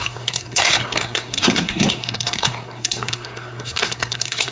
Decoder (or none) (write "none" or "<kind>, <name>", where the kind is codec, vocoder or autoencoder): codec, SNAC